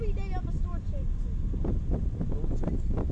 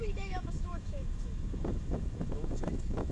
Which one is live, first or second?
first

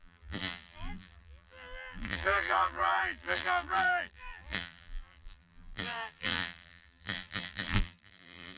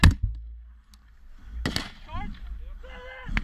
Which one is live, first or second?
second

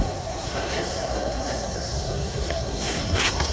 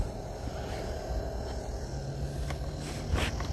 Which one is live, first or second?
second